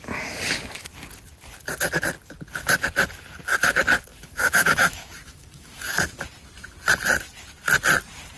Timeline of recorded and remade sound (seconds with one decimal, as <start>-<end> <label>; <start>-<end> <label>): 0.0-4.1 recorded; 4.1-6.1 remade; 6.1-8.4 recorded

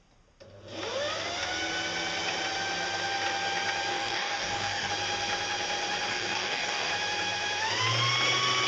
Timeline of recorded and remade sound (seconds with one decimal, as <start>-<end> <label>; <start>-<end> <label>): 0.0-3.9 recorded; 3.9-4.9 remade; 4.9-6.1 recorded; 6.1-6.9 remade; 6.9-8.7 recorded

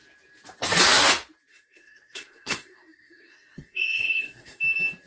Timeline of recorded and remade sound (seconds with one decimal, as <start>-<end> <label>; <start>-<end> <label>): 0.0-1.5 recorded; 1.5-4.6 remade; 4.6-5.1 recorded

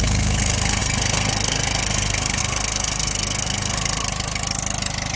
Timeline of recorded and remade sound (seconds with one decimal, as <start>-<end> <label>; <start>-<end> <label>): 0.0-4.0 remade; 4.0-5.2 recorded

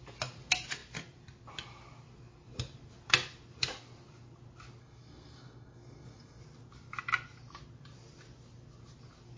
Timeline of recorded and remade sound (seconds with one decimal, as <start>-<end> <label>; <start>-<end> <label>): 0.0-4.8 recorded; 4.8-6.4 remade; 6.4-9.4 recorded

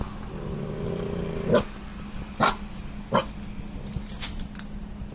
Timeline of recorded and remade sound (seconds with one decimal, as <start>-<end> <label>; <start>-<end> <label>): 0.0-5.1 recorded